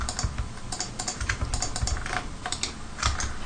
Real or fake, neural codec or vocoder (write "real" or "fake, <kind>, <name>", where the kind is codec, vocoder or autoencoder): real